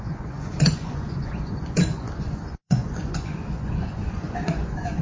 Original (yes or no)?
no